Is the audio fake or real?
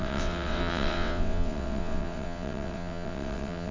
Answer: fake